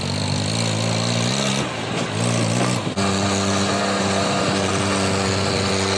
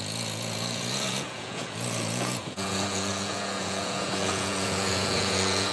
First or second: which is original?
first